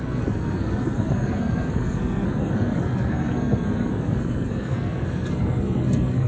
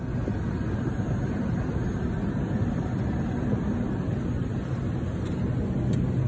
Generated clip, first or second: first